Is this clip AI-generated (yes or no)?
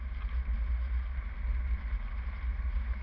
no